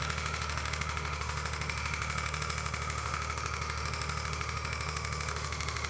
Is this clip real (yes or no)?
no